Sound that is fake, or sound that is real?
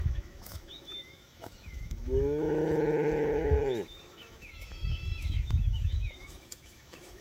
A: fake